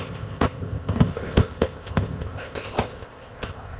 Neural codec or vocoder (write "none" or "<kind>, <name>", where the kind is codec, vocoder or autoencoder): codec, ZipCodec